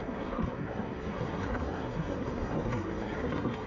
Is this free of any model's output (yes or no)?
no